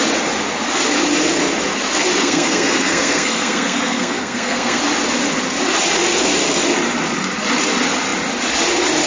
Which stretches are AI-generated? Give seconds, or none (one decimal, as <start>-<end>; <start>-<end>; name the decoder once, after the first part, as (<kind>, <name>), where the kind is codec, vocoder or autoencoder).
2.2-4.8 (codec, SNAC)